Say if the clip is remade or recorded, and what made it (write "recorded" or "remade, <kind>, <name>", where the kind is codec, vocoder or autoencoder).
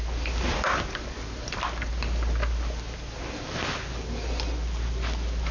recorded